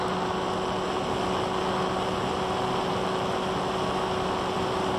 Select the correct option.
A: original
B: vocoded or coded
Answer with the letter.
A